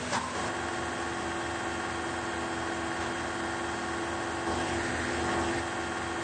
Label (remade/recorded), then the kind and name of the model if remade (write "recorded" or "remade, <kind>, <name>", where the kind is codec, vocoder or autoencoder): recorded